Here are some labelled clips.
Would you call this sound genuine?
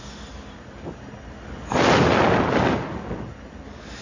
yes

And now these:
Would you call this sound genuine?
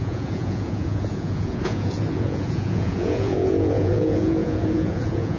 no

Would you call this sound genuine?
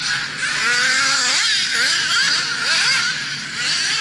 yes